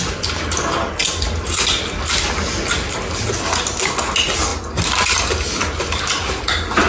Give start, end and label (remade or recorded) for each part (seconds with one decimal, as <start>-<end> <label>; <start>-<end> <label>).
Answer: 0.0-6.9 recorded